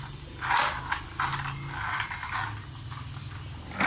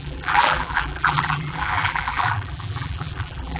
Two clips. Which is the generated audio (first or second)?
second